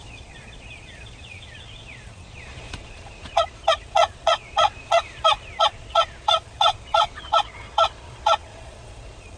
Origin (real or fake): fake